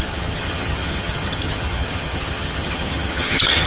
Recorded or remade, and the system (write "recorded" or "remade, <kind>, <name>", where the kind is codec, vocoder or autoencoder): remade, vocoder, HiFi-GAN